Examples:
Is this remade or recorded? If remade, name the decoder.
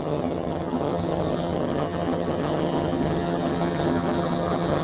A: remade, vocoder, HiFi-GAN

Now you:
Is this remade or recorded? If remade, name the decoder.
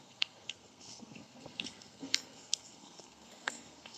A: remade, codec, SNAC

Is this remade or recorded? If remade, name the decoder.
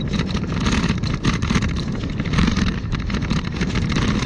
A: remade, vocoder, BigVGAN v2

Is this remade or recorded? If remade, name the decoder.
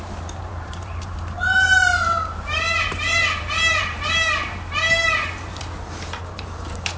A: remade, vocoder, BigVGAN v2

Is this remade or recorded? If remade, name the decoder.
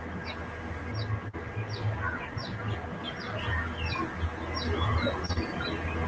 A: recorded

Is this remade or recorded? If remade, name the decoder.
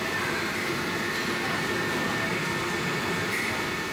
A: recorded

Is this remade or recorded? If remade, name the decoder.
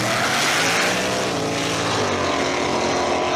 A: recorded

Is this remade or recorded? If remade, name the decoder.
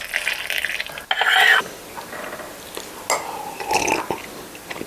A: recorded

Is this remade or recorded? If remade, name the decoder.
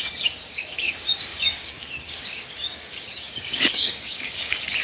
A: remade, codec, DAC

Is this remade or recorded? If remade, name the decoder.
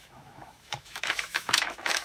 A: remade, autoencoder, DAC-VAE